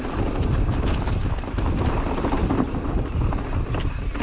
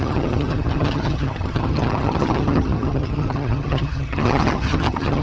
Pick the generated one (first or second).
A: second